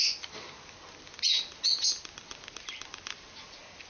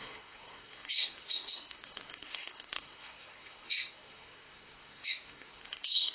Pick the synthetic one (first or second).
second